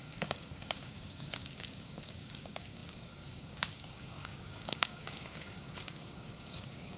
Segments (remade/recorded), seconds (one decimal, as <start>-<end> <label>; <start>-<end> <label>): 0.0-7.0 remade